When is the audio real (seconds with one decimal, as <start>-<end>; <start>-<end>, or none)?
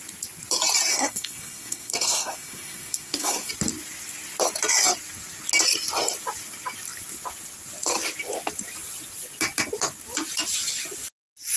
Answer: 0.0-0.9; 3.5-11.6